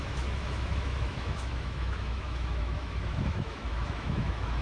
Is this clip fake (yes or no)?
yes